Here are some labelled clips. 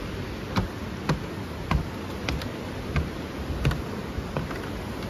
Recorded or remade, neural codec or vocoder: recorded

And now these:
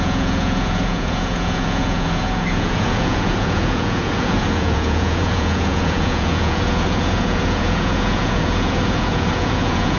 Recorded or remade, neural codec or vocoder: remade, vocoder, Vocos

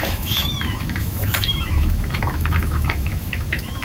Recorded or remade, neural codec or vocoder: remade, autoencoder, DAC-VAE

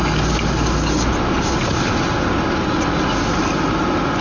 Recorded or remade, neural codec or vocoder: recorded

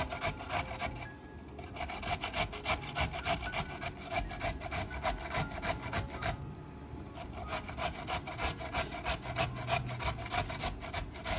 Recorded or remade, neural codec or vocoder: recorded